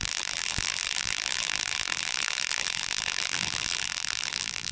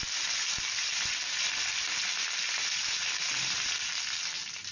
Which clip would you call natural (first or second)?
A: second